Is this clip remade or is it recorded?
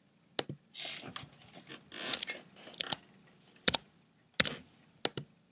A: recorded